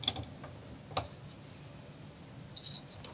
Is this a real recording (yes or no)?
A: yes